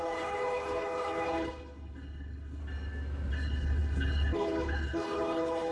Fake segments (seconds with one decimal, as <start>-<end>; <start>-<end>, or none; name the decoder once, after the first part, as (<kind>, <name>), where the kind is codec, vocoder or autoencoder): 0.0-2.6 (codec, HILCodec); 3.3-5.7